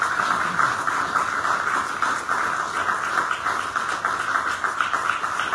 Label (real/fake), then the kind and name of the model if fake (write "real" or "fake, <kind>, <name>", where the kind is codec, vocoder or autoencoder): real